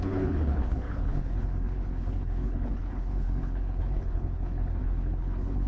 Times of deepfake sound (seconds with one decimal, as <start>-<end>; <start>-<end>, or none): 0.0-5.7